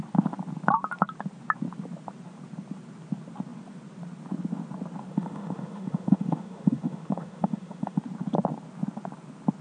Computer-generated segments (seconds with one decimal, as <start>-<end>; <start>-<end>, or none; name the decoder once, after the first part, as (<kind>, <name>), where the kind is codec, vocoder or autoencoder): 5.1-8.0 (autoencoder, DAC-VAE)